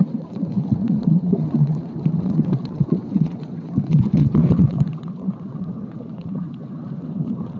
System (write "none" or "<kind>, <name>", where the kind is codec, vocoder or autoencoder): vocoder, WaveNeXt